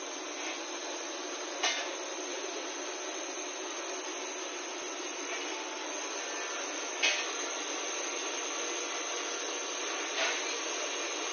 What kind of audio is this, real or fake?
real